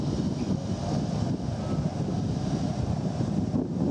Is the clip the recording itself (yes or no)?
no